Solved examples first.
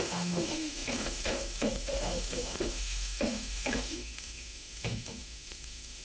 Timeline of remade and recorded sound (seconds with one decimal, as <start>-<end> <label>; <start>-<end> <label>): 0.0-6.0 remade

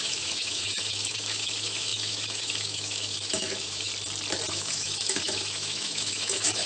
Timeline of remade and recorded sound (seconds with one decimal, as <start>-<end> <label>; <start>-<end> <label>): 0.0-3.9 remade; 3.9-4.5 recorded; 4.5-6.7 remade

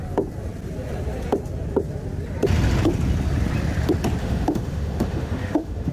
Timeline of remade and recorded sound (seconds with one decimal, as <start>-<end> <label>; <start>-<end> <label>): 0.0-4.2 recorded; 4.2-5.9 remade

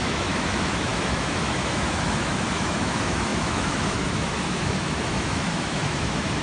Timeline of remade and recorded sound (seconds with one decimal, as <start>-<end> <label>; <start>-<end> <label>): 0.0-6.4 remade

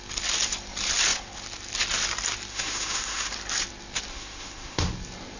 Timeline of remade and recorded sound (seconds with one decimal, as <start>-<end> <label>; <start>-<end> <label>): 0.0-2.5 recorded; 2.5-3.3 remade; 3.3-4.1 recorded; 4.1-4.9 remade; 4.9-5.4 recorded

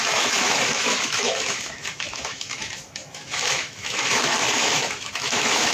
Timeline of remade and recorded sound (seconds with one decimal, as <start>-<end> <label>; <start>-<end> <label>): 0.0-5.7 remade

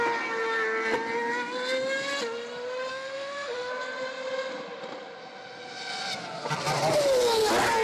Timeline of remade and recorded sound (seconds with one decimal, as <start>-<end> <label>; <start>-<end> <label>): 0.0-2.9 recorded; 2.9-3.7 remade; 3.7-7.8 recorded